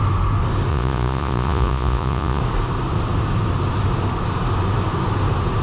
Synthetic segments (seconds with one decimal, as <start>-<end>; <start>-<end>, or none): 0.7-2.4